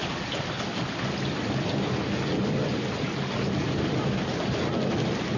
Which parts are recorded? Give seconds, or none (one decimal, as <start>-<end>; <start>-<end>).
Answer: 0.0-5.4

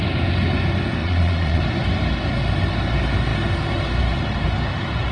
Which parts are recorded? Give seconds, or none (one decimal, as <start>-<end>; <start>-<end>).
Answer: 0.0-1.0; 1.6-5.1

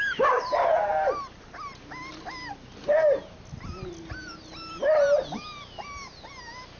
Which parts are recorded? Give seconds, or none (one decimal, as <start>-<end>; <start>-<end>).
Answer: 0.0-6.8

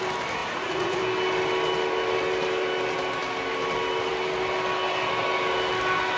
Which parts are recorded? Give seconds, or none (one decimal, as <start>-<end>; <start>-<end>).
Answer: 0.0-0.4; 1.0-6.2

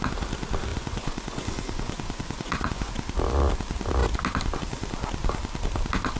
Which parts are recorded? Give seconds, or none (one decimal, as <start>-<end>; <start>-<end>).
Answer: 0.0-0.7; 2.9-6.2

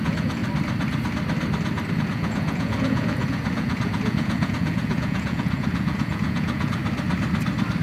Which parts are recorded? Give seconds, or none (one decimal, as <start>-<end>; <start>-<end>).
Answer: 0.4-1.9; 6.8-7.8

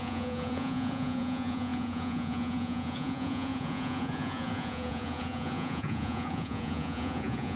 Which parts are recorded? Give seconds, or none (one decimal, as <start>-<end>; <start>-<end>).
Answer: none